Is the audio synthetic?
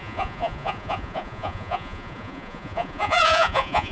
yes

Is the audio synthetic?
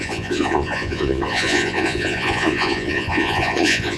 yes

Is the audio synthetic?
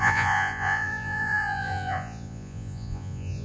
yes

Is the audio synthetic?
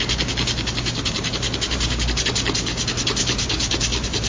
no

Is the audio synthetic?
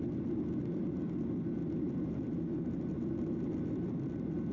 no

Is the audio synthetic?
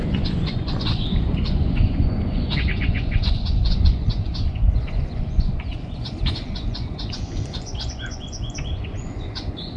yes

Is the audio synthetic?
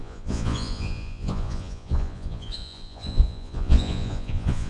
yes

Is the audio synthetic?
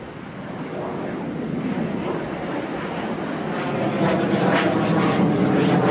no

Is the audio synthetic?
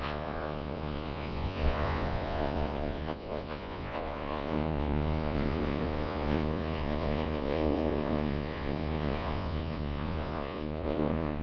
yes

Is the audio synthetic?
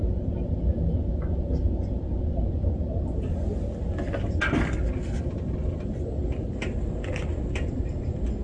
no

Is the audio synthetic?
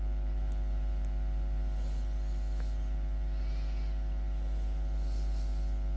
no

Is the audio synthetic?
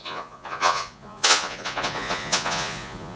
yes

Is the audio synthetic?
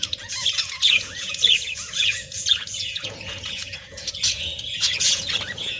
yes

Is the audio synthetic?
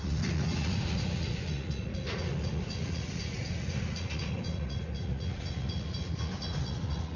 yes